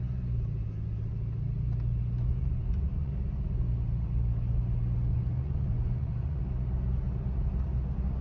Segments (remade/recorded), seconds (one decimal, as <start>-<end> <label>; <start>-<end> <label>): 0.0-2.4 recorded; 2.4-3.1 remade; 3.1-5.1 recorded; 5.1-6.4 remade; 6.4-8.2 recorded